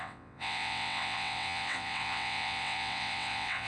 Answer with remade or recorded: remade